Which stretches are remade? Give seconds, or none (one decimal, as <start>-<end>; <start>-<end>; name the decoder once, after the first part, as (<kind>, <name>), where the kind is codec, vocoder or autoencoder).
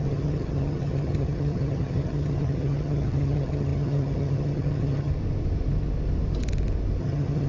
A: 0.0-5.1 (vocoder, HiFi-GAN); 7.0-7.5